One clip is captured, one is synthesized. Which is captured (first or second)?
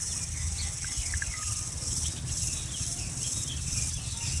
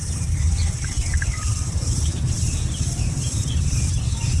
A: first